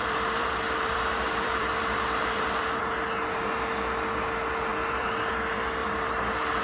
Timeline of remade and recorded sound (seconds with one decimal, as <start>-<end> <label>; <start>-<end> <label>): 0.0-2.8 remade; 2.8-4.7 recorded; 4.7-5.3 remade; 5.3-5.8 recorded; 5.8-6.6 remade